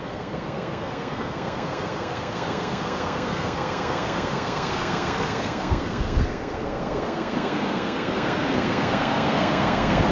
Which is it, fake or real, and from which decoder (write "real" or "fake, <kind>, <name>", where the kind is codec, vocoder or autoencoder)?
fake, codec, SNAC